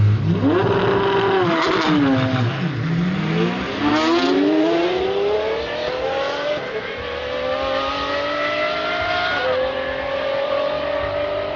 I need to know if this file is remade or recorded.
recorded